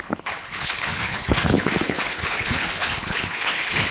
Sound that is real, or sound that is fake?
fake